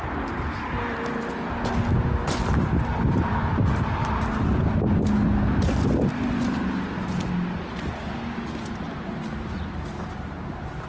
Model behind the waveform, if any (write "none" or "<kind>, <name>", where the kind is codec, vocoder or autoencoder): none